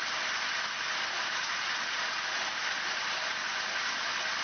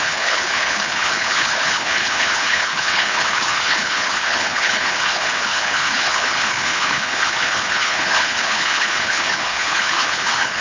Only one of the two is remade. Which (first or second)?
second